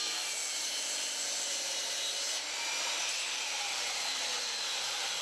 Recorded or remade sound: remade